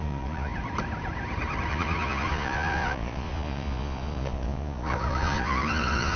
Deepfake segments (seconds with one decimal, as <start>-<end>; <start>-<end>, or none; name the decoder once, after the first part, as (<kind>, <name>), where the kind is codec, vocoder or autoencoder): 0.0-0.5 (vocoder, Vocos); 1.7-6.2